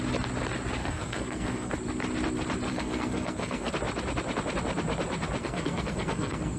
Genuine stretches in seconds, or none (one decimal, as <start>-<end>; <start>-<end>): 0.0-0.8; 1.7-2.7; 3.7-5.4